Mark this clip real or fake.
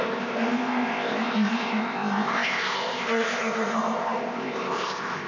fake